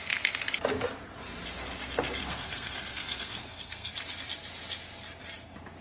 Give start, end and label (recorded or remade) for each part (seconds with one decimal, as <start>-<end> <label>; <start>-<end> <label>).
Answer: 0.0-2.2 recorded; 2.2-3.9 remade; 3.9-5.8 recorded